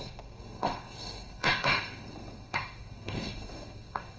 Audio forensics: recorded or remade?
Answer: remade